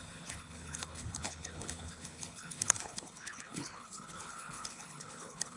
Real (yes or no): no